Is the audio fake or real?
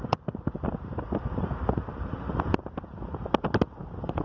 real